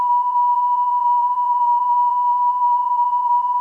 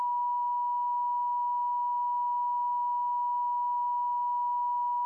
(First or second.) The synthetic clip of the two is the first